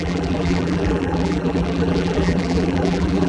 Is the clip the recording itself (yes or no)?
no